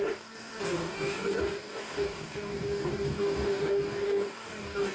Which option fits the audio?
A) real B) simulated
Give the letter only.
B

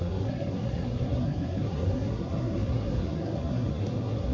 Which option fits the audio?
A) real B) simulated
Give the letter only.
B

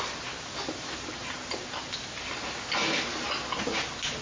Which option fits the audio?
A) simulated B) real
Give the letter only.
B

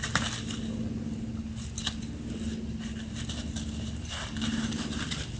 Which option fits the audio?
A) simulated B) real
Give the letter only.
B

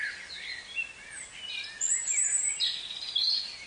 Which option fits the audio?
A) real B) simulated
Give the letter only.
A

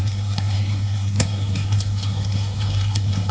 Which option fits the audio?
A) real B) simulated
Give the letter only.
B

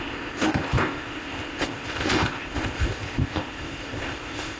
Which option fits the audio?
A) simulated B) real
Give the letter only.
A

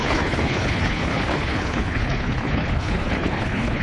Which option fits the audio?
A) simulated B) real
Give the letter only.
A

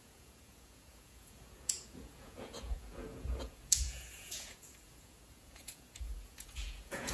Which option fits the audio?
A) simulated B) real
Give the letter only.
A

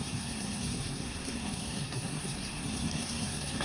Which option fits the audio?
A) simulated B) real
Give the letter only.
A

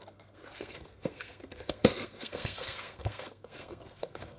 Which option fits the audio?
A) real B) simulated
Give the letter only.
B